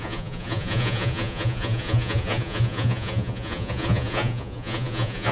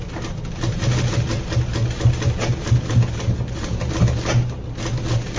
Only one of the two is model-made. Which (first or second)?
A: first